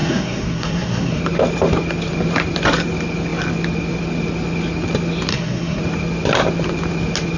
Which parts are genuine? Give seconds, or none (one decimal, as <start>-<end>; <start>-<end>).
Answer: 1.2-5.3; 5.8-7.4